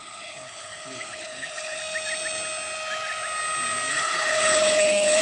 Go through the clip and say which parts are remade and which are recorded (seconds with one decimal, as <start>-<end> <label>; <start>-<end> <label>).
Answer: 0.0-1.8 remade; 1.8-3.9 recorded; 3.9-5.2 remade